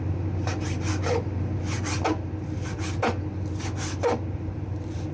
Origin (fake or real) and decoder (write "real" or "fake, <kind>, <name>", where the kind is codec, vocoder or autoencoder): real